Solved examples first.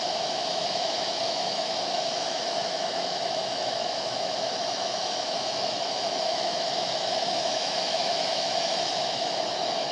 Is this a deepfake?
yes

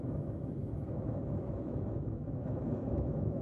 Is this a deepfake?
yes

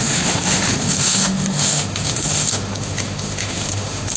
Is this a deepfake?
yes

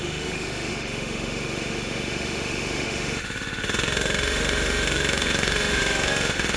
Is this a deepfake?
yes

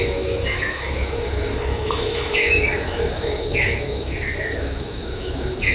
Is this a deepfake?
yes